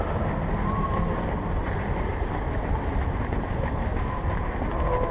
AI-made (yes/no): no